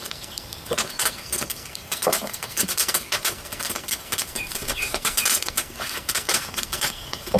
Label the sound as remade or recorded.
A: remade